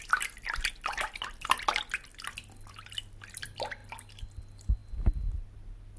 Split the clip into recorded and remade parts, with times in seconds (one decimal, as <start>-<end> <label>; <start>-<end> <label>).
0.0-6.0 recorded